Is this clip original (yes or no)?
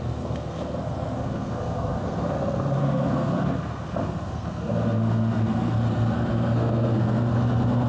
no